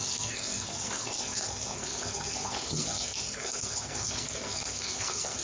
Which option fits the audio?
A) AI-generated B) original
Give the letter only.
A